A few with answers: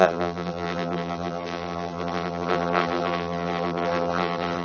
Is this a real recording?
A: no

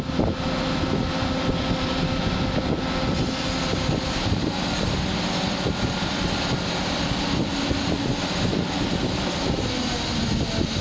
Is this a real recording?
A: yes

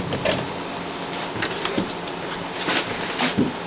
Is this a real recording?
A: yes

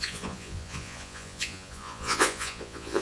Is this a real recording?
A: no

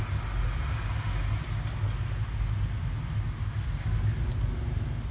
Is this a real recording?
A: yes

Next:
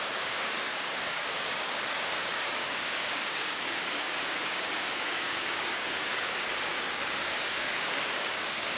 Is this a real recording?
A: no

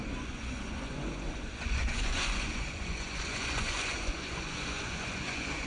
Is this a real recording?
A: no